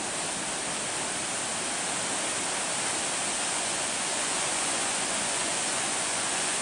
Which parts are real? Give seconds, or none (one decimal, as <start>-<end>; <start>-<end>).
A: 0.0-3.5